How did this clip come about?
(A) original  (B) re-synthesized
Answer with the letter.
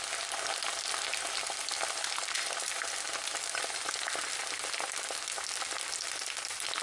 A